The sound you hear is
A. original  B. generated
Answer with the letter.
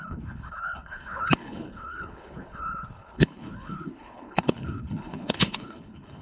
B